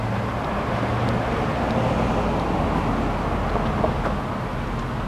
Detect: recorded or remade recorded